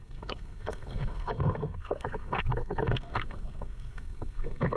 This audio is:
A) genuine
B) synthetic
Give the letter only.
B